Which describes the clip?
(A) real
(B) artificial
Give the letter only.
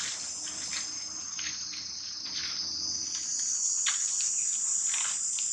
A